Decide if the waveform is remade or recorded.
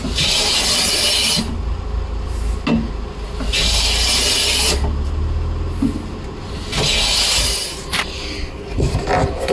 recorded